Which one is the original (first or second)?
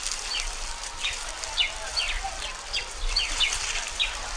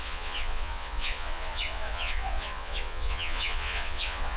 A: first